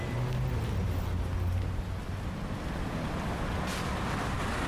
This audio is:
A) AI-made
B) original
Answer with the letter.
B